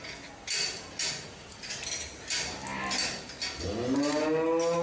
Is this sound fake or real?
real